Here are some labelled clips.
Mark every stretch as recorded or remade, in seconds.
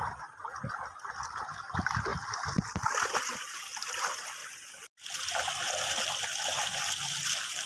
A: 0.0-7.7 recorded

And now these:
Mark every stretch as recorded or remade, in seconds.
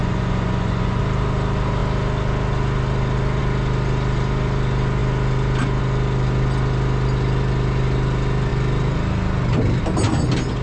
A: 0.0-1.0 remade; 1.0-10.6 recorded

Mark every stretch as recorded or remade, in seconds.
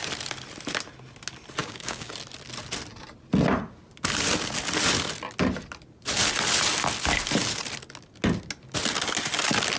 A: 0.0-1.6 recorded; 1.6-2.1 remade; 2.1-9.8 recorded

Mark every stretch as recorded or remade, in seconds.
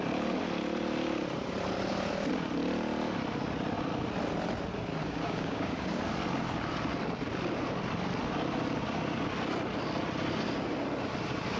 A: 0.0-5.0 recorded; 5.0-6.0 remade; 6.0-11.6 recorded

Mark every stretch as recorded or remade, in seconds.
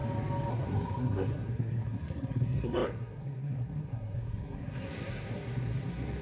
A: 0.0-0.5 recorded; 0.5-6.2 remade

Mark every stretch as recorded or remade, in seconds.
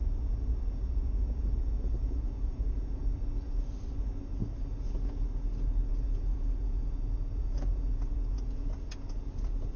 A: 0.0-3.0 remade; 3.0-5.9 recorded; 5.9-9.8 remade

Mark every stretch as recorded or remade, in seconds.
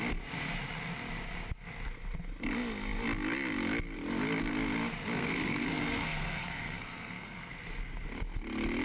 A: 0.0-5.2 recorded; 5.2-7.5 remade; 7.5-8.8 recorded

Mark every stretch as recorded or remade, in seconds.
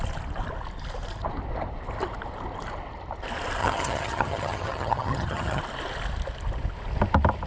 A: 0.0-3.6 recorded; 3.6-5.6 remade; 5.6-7.5 recorded